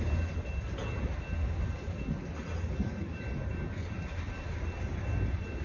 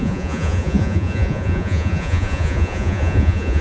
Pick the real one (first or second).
first